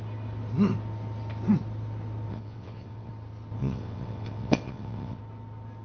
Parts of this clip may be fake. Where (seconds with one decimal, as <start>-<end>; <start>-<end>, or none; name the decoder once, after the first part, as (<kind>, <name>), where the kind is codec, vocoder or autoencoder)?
2.3-3.1 (vocoder, WaveNeXt); 3.6-5.2